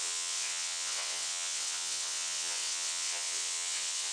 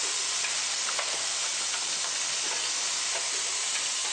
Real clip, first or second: second